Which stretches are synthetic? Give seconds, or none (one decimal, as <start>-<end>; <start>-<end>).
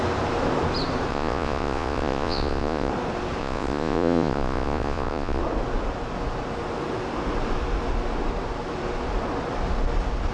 1.1-2.9; 3.4-5.4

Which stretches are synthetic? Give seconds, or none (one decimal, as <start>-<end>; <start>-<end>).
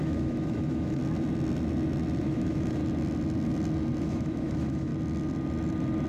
0.0-1.0; 2.2-2.8; 4.0-4.9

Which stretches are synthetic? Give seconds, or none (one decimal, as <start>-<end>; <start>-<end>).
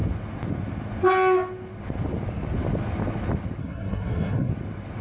3.6-4.5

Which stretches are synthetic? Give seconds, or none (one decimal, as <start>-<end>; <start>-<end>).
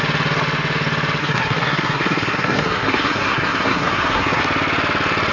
1.2-4.4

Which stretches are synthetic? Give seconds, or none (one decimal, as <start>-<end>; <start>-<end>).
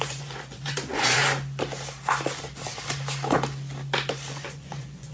0.0-1.2; 4.3-5.1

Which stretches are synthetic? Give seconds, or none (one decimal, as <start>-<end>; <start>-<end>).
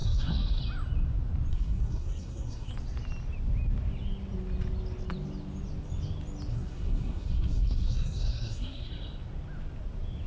0.0-0.6; 1.5-2.7; 6.5-8.9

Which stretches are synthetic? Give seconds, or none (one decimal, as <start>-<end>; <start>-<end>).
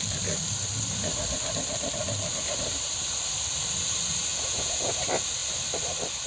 4.3-4.9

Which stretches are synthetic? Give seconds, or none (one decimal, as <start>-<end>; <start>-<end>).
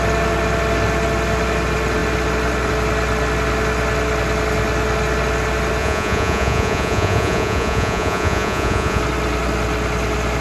5.8-9.0